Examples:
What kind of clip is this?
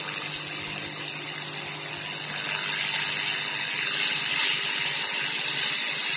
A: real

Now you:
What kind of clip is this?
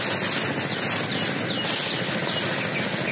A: real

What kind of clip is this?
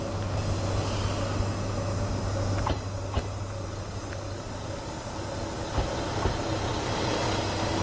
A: real